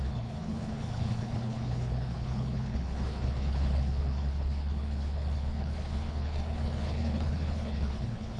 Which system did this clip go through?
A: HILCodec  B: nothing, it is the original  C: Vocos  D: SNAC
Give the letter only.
A